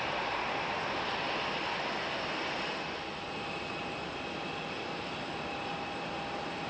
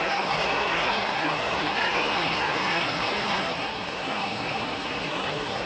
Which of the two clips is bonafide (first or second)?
first